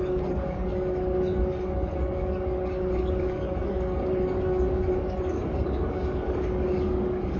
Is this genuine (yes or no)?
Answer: no